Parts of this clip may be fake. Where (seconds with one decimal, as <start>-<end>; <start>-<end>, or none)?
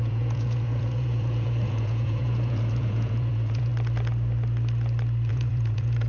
0.0-3.7; 5.3-6.1